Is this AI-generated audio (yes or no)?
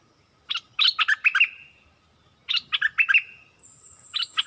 no